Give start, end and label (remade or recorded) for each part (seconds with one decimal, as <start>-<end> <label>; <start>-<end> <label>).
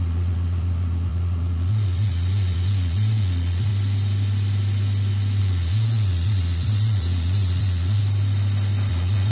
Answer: 0.0-3.7 remade; 3.7-5.4 recorded; 5.4-8.0 remade; 8.0-8.9 recorded; 8.9-9.3 remade